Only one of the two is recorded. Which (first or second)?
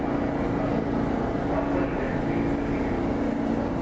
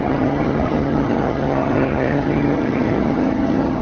first